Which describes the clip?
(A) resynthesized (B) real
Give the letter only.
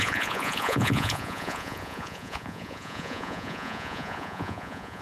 A